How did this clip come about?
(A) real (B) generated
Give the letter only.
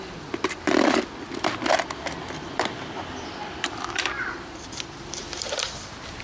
B